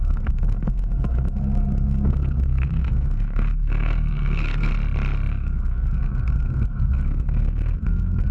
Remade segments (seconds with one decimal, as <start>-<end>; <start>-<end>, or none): 0.0-4.7; 5.3-8.3